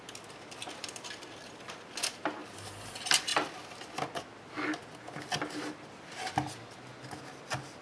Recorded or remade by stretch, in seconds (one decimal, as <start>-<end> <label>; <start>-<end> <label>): 0.0-7.8 recorded